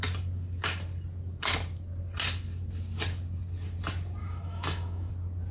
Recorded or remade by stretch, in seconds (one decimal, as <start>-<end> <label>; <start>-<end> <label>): 0.0-4.2 recorded; 4.2-5.1 remade; 5.1-5.5 recorded